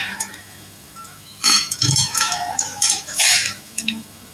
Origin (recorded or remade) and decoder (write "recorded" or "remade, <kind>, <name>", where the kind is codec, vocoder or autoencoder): remade, autoencoder, DAC-VAE